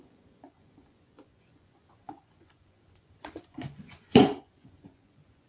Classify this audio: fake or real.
fake